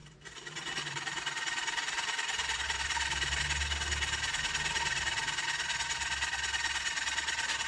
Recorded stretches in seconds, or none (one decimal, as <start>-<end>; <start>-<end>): 3.4-7.7